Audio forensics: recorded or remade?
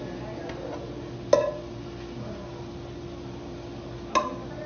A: recorded